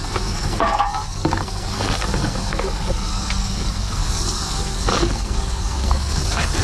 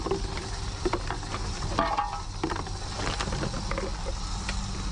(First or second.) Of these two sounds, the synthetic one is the first